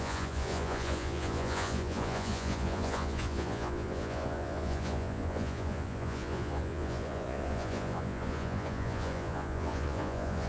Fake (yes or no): yes